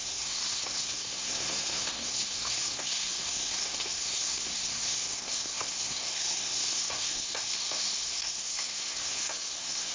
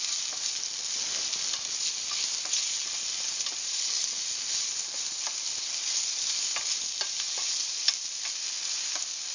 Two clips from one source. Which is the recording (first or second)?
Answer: second